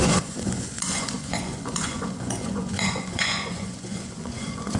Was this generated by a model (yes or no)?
yes